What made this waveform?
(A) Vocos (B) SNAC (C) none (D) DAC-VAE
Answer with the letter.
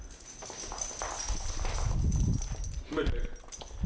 C